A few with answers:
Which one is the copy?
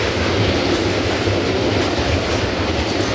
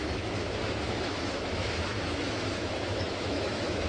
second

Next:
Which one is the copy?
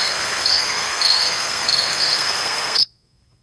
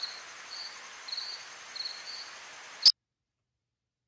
first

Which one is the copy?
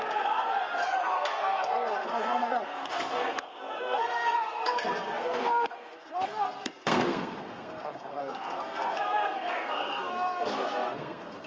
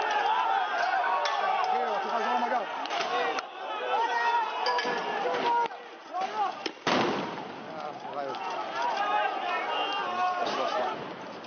first